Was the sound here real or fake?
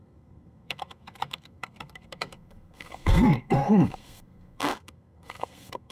fake